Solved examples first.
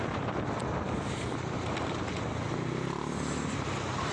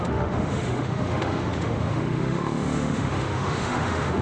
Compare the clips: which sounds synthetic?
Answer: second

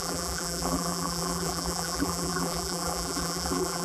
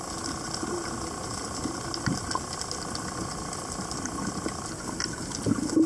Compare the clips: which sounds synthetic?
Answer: first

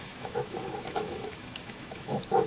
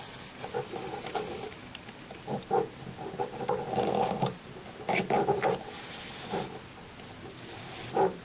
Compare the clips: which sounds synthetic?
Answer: first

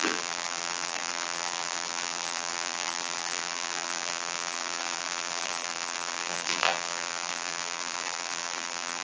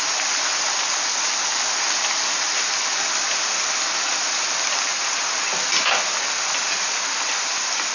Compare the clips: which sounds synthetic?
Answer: first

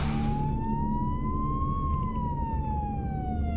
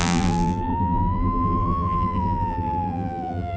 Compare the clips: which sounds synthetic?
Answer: second